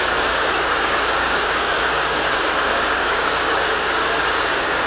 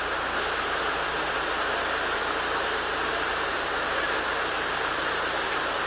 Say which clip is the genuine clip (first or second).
second